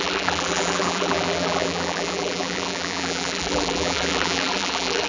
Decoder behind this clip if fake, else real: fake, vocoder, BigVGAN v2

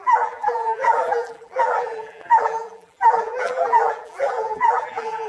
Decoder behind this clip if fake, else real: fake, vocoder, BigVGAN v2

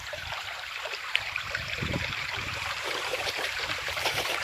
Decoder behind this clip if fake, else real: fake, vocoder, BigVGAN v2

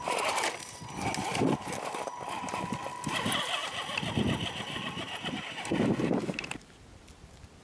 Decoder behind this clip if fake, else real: real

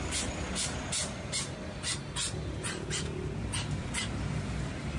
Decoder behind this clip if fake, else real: fake, vocoder, BigVGAN v2